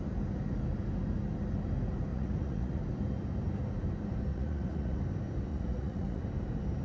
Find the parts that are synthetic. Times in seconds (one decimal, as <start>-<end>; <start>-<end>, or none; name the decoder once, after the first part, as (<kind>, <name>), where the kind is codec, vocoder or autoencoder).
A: 2.1-2.8 (vocoder, Vocos); 4.3-5.0; 5.5-6.2